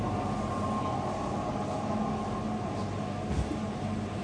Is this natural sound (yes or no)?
yes